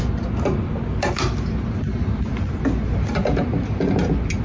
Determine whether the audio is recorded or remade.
recorded